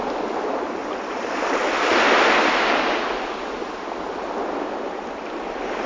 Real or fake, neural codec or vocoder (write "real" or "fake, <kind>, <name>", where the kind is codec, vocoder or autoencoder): real